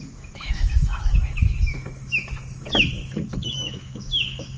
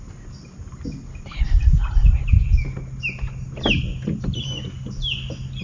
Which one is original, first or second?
second